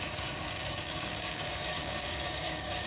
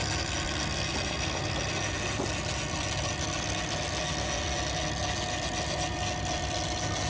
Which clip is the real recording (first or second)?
second